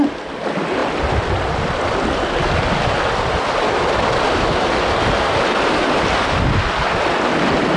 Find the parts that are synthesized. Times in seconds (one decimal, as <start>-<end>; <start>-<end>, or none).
none